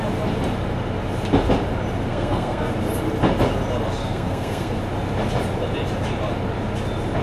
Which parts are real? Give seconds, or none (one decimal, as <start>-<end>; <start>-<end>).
0.0-2.1; 2.7-4.0; 4.8-7.2